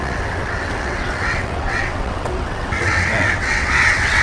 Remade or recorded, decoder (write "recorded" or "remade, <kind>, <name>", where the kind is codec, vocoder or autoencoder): remade, vocoder, WaveNeXt